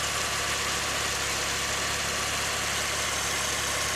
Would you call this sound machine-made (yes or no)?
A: no